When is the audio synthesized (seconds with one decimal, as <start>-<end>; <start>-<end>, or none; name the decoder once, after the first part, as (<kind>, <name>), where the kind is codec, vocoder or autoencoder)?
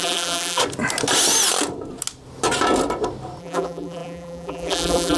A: 0.0-0.6 (vocoder, BigVGAN v2); 3.4-5.2